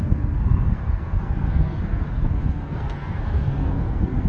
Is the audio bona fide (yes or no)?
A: no